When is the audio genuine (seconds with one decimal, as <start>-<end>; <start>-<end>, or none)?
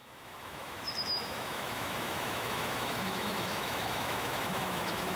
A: none